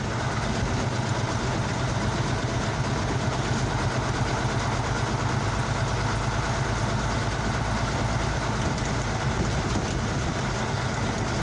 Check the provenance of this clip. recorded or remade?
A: recorded